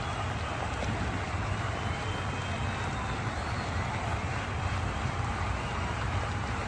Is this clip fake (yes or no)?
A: no